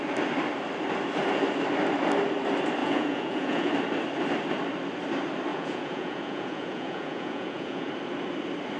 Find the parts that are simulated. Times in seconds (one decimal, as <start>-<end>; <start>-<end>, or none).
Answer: 2.8-3.7; 5.5-7.9